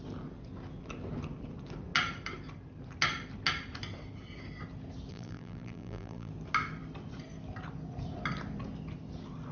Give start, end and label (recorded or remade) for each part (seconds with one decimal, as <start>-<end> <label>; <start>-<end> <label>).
0.0-5.1 recorded; 5.1-6.3 remade; 6.3-9.5 recorded